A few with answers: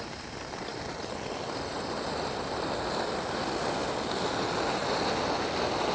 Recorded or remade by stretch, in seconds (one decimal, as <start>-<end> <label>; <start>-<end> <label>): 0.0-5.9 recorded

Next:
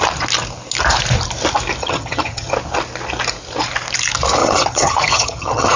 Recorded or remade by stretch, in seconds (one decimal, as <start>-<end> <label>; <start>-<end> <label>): 0.0-1.8 recorded; 1.8-2.5 remade; 2.5-4.4 recorded; 4.4-5.8 remade

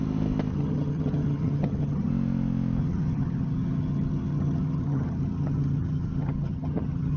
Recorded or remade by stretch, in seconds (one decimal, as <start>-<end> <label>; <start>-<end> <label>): 0.0-0.5 recorded; 0.5-2.1 remade; 2.1-2.8 recorded; 2.8-7.2 remade

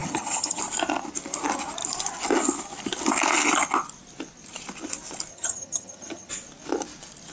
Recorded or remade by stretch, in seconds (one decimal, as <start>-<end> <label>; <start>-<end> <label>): 0.0-0.6 remade; 0.6-5.3 recorded; 5.3-6.3 remade; 6.3-7.3 recorded

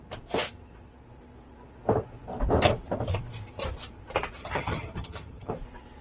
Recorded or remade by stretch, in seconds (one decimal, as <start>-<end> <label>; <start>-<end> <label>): 0.0-4.4 recorded; 4.4-5.5 remade; 5.5-6.0 recorded

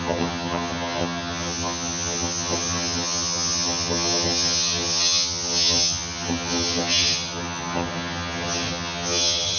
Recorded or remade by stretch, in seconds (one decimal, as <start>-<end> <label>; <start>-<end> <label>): 0.0-9.6 remade

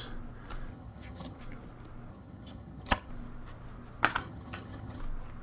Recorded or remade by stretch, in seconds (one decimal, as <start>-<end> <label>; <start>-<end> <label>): 0.0-0.7 recorded; 0.7-1.4 remade; 1.4-2.1 recorded; 2.1-3.1 remade; 3.1-4.2 recorded; 4.2-5.0 remade; 5.0-5.4 recorded